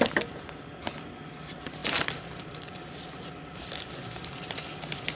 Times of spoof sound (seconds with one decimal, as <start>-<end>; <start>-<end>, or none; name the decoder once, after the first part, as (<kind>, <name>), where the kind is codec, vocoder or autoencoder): 1.8-5.2 (vocoder, BigVGAN v2)